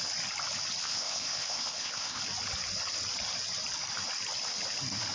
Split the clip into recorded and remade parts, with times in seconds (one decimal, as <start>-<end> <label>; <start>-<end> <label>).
0.0-0.8 recorded; 0.8-2.2 remade; 2.2-5.1 recorded